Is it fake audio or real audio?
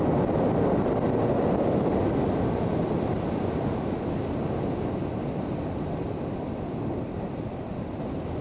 real